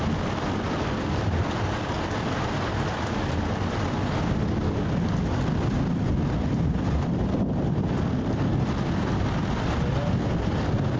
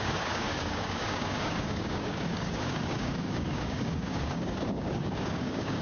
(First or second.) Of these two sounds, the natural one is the first